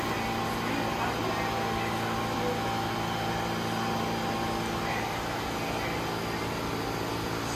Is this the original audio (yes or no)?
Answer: yes